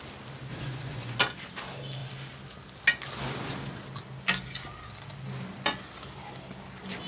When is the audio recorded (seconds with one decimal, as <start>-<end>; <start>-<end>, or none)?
0.0-0.5; 1.2-7.1